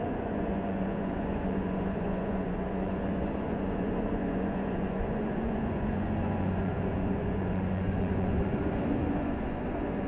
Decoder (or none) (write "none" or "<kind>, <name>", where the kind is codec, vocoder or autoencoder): vocoder, Vocos